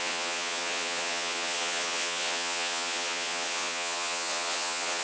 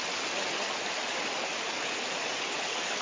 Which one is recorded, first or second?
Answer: second